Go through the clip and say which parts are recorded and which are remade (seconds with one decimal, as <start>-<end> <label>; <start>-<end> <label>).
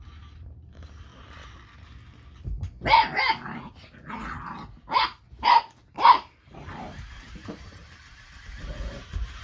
0.0-1.1 remade; 1.1-5.9 recorded; 5.9-7.8 remade; 7.8-9.4 recorded